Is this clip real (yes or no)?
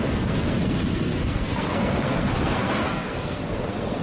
no